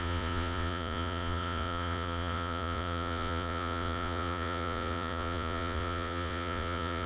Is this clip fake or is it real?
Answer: fake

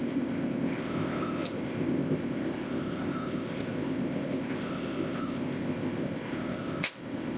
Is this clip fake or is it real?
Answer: fake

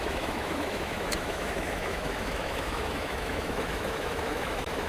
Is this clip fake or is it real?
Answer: fake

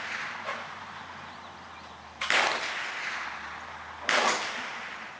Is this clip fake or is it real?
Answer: real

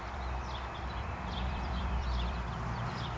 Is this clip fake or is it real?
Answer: fake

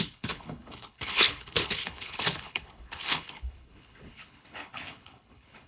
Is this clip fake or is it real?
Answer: fake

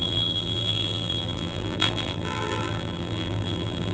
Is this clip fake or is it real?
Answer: fake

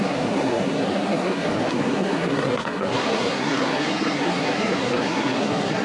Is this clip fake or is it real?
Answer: fake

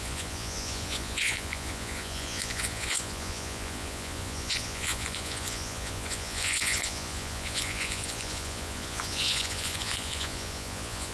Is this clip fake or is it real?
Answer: fake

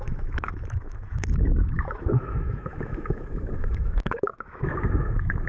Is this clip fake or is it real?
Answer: fake